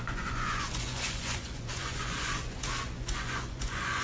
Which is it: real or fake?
fake